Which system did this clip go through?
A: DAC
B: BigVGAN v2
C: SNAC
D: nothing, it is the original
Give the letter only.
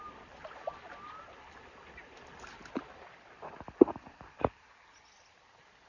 D